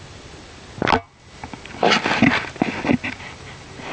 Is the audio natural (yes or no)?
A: yes